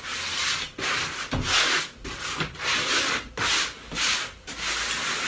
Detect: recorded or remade recorded